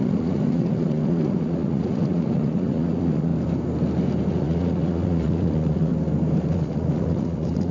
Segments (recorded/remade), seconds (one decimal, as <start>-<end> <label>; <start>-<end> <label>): 0.0-3.3 remade; 3.3-4.3 recorded; 4.3-5.9 remade; 5.9-6.5 recorded; 6.5-7.7 remade